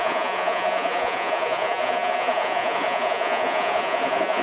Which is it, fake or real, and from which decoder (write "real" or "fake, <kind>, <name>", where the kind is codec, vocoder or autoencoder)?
fake, vocoder, Vocos